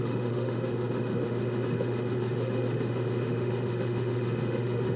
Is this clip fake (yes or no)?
yes